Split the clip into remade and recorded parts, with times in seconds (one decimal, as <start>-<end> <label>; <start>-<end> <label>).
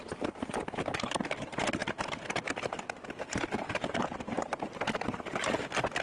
0.0-6.0 remade